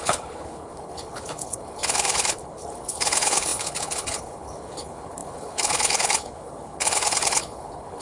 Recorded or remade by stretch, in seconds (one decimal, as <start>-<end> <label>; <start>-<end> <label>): 0.0-8.0 remade